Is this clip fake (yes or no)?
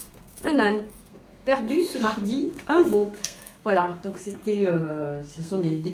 yes